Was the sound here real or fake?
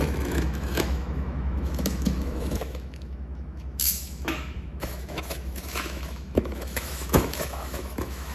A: fake